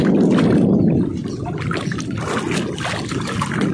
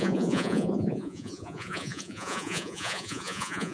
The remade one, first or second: second